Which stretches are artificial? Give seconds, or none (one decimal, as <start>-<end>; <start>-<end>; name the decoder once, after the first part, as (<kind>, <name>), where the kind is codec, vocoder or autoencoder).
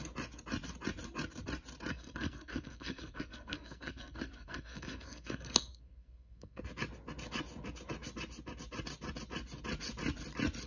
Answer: 1.9-6.6 (codec, SNAC)